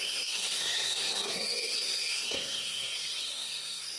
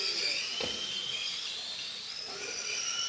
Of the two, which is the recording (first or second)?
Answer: second